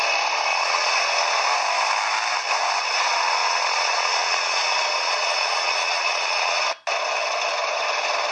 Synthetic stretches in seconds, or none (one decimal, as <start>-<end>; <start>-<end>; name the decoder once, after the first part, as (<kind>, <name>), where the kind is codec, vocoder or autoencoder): 0.5-1.0 (vocoder, Vocos); 3.4-6.6